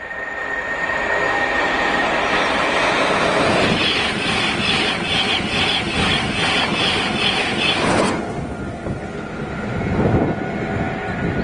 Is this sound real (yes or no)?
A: yes